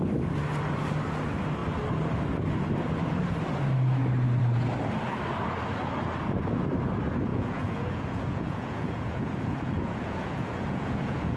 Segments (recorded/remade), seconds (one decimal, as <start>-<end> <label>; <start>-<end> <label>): 0.0-7.3 recorded; 7.3-11.4 remade